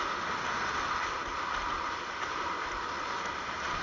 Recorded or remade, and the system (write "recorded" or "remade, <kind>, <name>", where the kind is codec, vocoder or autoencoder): recorded